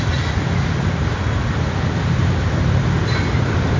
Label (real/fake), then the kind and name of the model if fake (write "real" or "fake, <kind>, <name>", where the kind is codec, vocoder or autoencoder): real